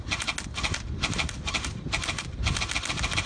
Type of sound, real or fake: real